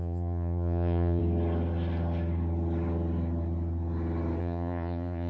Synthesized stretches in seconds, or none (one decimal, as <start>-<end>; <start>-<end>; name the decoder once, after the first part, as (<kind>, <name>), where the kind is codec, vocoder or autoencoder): 0.0-1.2 (vocoder, Vocos); 4.4-5.3